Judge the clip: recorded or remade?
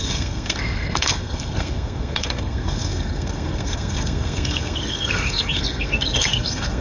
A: remade